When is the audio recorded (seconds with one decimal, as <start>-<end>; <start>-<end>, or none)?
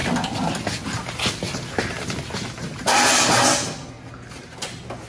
0.0-5.1